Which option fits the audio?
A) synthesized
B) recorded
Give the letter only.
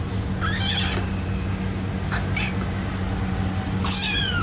B